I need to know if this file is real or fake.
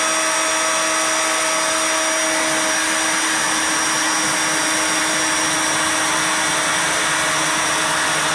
real